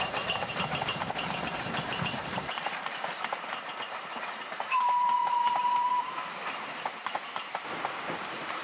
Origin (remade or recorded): remade